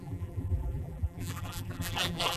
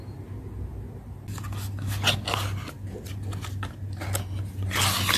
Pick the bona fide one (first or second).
second